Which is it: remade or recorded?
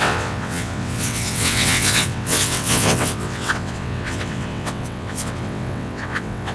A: remade